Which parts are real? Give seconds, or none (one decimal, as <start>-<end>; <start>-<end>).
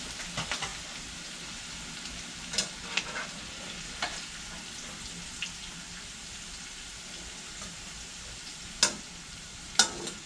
0.0-10.3